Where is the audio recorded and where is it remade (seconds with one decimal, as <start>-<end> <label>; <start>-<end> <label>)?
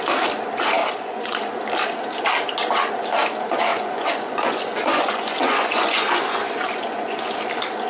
0.0-0.8 recorded; 0.8-1.4 remade; 1.4-3.7 recorded; 3.7-7.3 remade; 7.3-7.9 recorded